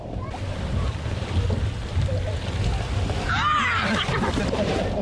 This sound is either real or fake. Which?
real